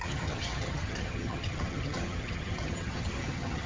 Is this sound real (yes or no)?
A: no